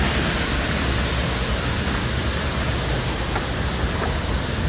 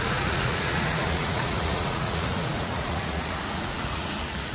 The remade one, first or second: second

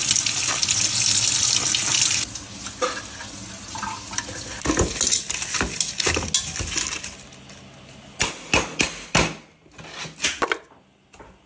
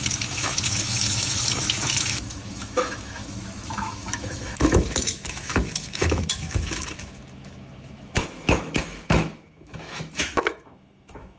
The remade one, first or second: second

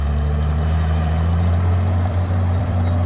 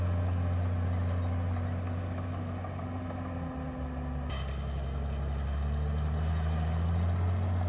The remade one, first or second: first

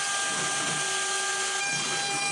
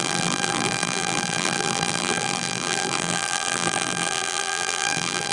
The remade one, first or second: second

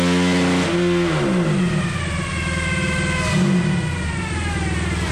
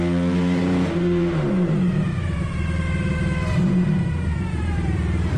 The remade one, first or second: second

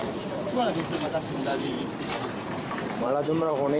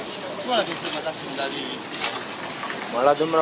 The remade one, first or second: first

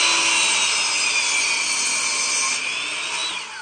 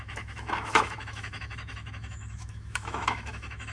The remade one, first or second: second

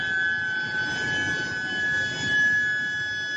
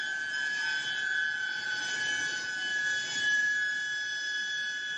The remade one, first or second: second